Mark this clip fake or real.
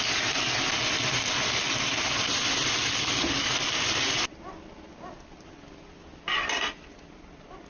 real